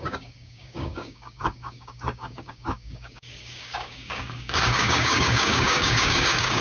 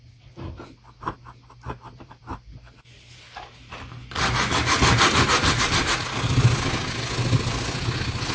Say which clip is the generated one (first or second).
first